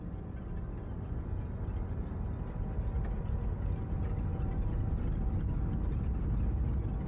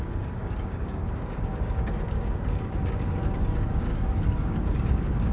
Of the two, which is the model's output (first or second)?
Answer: second